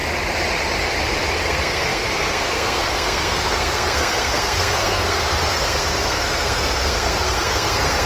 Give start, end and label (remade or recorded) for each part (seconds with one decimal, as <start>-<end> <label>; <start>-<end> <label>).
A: 0.0-1.4 recorded; 1.4-8.1 remade